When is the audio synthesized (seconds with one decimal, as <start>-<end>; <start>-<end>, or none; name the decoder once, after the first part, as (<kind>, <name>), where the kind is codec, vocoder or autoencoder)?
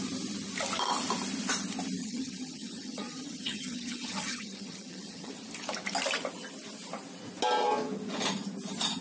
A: 2.0-5.3 (vocoder, HiFi-GAN)